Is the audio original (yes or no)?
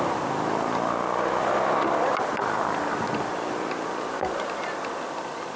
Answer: yes